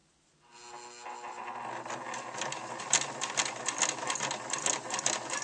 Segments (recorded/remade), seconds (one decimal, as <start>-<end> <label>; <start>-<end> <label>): 0.0-5.4 recorded